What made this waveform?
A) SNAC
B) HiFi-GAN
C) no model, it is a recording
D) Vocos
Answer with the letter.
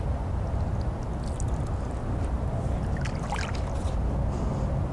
C